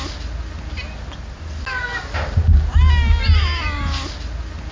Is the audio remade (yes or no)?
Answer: no